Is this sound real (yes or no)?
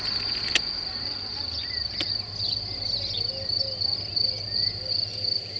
yes